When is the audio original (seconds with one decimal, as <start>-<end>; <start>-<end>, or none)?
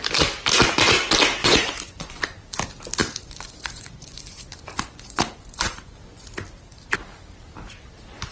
0.0-1.4; 2.2-3.0; 6.3-8.3